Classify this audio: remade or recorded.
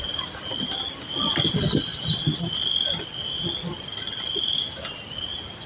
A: recorded